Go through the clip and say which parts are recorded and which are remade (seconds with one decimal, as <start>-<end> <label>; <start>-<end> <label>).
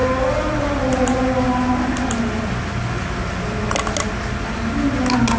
0.0-5.4 recorded